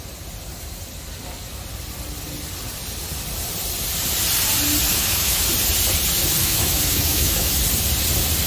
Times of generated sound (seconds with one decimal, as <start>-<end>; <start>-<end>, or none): 4.9-5.5; 6.4-7.5